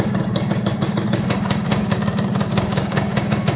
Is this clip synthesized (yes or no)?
yes